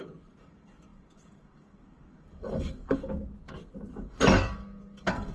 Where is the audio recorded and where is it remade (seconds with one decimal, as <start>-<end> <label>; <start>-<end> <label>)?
0.0-5.3 remade